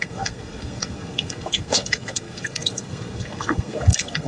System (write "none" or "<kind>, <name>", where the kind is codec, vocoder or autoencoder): codec, SNAC